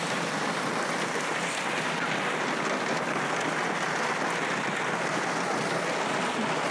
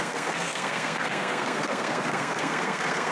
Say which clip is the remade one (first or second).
second